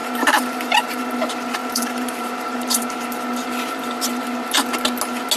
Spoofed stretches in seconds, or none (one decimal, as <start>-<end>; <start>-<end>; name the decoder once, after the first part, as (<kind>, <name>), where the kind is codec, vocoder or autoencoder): 0.0-1.0 (vocoder, BigVGAN v2); 1.6-2.8